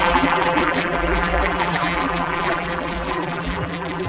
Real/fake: fake